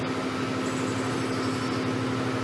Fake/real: real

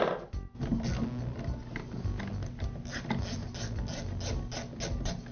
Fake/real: real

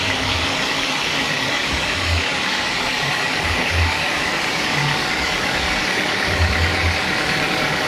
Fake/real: fake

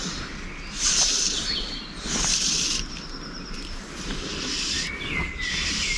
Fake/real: real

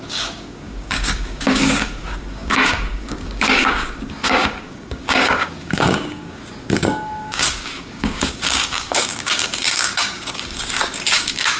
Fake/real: fake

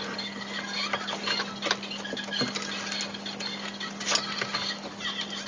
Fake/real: real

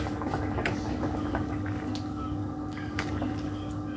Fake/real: fake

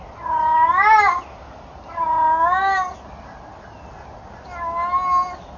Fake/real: real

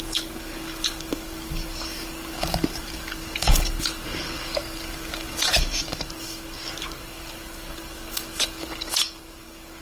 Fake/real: fake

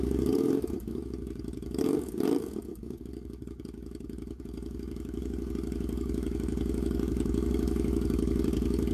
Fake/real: fake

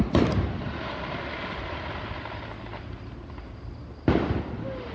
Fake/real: real